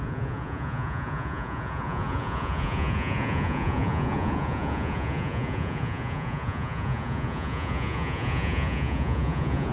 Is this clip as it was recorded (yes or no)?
no